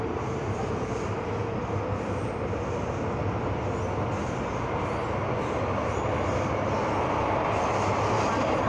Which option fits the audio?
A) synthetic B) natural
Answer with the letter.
B